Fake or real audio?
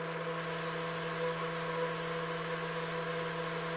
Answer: real